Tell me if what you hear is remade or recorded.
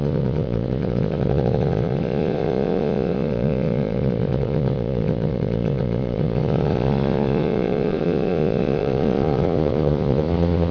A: remade